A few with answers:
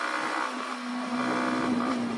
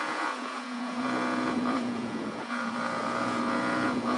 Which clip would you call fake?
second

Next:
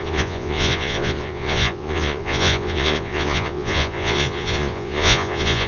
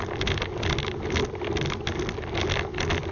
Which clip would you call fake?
first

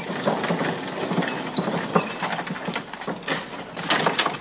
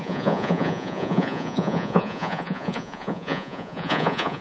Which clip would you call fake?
second